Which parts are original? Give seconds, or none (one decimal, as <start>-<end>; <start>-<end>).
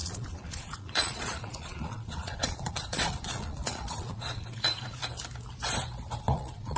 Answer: 5.0-6.2